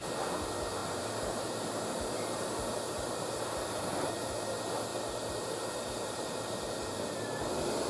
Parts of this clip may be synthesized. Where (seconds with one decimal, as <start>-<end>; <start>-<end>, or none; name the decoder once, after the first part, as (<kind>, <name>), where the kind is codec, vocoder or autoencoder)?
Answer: 0.8-4.1 (vocoder, BigVGAN v2); 4.9-6.6